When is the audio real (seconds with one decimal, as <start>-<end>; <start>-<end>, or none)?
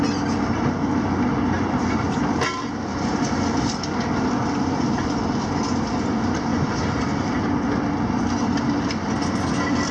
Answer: 0.0-6.5; 7.3-9.9